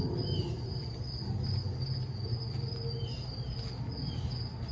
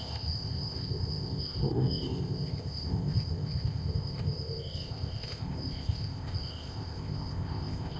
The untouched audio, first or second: first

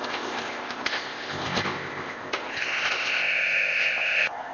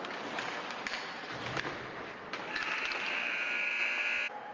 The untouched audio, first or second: second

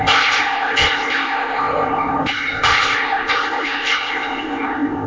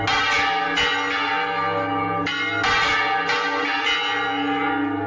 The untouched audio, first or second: second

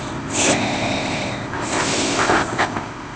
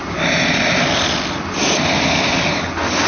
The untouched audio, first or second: second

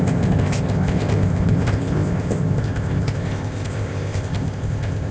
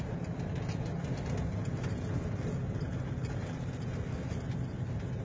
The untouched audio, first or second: second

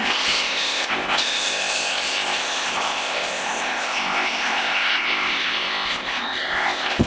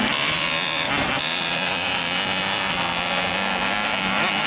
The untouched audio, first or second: second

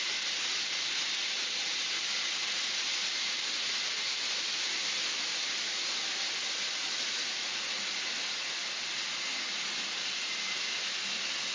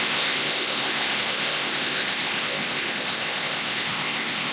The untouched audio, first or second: first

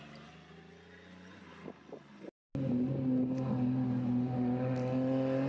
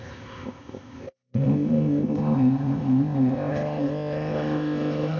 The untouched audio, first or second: first